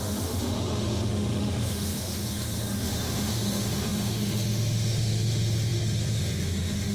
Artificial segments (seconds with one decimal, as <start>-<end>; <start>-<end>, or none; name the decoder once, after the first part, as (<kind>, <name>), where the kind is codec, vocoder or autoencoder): 0.0-6.9 (autoencoder, DAC-VAE)